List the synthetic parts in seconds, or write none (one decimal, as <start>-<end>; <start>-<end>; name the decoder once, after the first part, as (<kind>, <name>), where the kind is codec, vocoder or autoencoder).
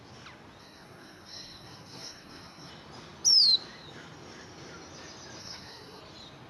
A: 0.6-2.7 (codec, SNAC); 5.4-6.0